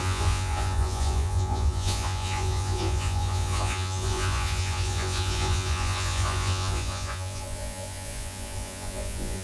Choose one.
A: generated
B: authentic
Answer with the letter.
A